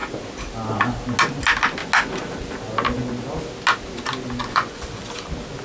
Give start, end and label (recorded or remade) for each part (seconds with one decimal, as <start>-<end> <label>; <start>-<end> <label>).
0.0-4.4 recorded; 4.4-5.0 remade; 5.0-5.6 recorded